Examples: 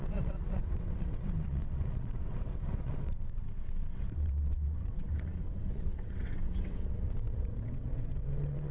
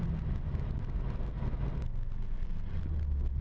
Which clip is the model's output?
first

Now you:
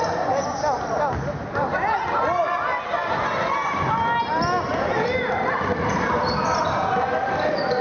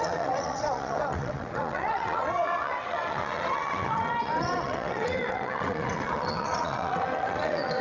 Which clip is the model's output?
second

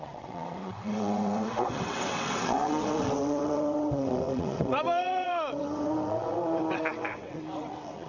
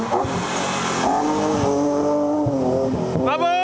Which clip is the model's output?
first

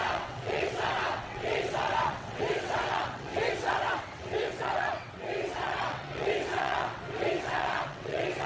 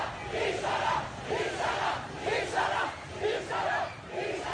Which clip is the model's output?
first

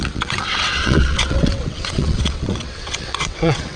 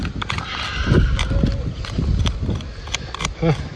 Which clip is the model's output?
first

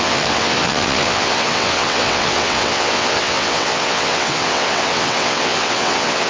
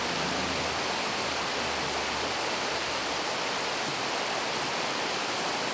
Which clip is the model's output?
first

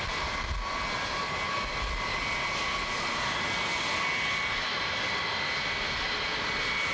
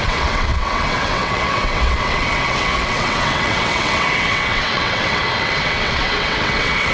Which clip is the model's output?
second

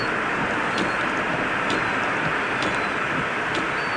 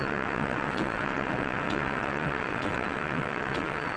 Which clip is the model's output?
second